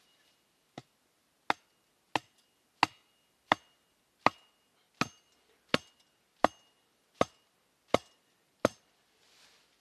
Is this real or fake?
real